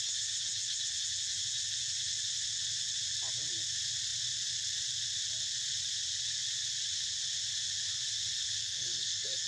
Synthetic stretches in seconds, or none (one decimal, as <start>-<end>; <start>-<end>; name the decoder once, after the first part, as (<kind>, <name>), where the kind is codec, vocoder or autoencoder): 8.6-9.5 (codec, SNAC)